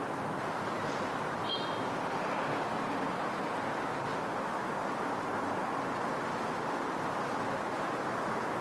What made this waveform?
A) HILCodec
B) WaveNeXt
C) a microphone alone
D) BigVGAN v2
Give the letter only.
C